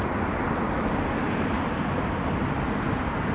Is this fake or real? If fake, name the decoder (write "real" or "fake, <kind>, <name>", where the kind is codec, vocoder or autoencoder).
real